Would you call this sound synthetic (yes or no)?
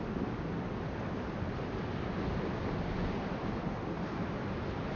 no